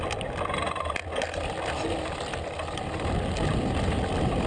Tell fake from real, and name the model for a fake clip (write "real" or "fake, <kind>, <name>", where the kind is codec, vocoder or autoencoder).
real